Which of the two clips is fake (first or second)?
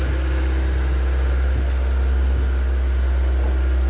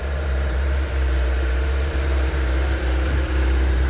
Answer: second